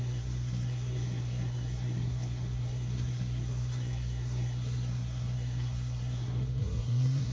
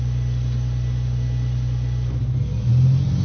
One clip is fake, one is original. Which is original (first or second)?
second